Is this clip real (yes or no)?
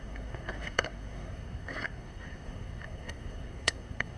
no